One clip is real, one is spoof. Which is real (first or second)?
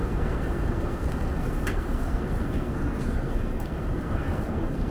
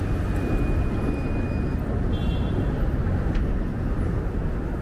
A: second